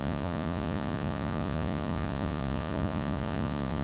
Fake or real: fake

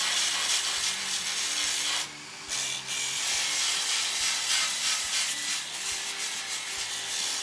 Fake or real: real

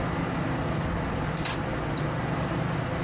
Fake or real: real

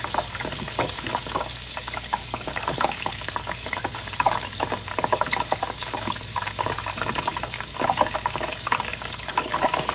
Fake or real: fake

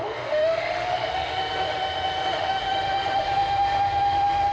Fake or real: fake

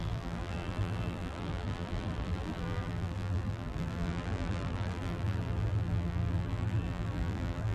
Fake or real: fake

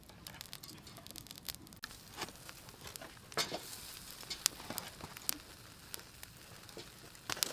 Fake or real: real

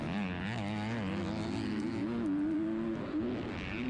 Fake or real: real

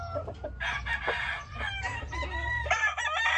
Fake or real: real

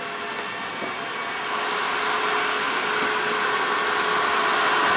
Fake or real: real